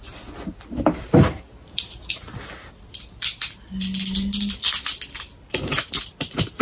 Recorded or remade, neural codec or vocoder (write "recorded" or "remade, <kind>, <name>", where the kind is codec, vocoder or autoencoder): recorded